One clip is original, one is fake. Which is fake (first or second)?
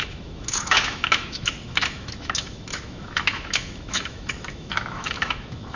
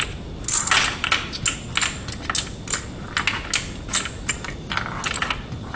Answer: first